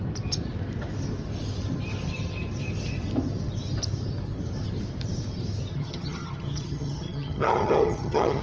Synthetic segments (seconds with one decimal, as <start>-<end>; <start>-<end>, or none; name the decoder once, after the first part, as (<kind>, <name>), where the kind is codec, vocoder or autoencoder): 5.7-8.4 (vocoder, HiFi-GAN)